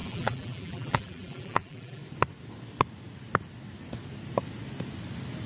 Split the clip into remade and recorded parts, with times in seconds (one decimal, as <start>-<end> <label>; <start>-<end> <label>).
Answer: 0.0-2.0 remade; 2.0-5.5 recorded